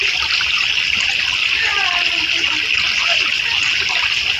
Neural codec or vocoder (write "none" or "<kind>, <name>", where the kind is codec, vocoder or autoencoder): none